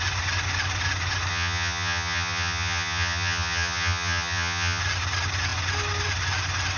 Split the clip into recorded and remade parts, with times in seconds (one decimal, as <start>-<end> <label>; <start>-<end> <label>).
0.0-1.3 recorded; 1.3-4.8 remade; 4.8-6.8 recorded